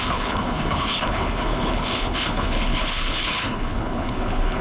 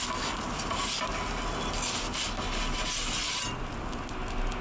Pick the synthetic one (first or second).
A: first